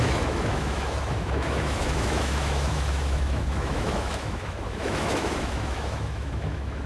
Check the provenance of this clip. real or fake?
fake